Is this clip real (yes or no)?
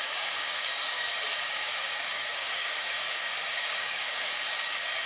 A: no